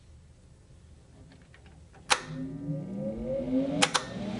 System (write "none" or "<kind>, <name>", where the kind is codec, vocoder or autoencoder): none